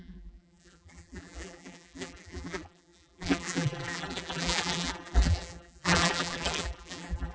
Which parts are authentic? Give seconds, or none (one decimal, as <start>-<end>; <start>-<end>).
none